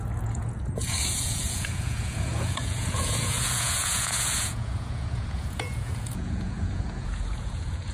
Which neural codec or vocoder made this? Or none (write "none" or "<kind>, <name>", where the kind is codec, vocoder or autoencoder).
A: vocoder, Vocos